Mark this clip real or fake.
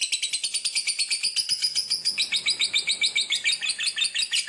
real